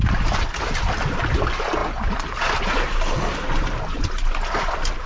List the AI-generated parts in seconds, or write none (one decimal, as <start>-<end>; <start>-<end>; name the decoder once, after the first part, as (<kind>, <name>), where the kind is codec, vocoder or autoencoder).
none